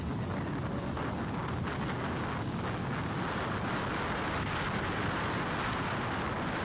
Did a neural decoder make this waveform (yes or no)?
no